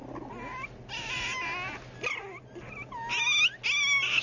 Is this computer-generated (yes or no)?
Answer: no